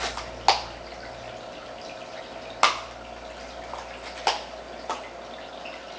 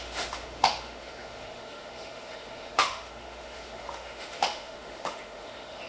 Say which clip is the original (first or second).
first